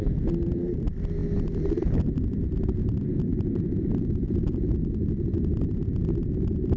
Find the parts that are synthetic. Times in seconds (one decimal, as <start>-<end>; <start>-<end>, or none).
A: none